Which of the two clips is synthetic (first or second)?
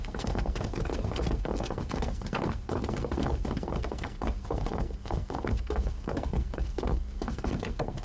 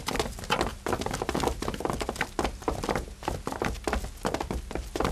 first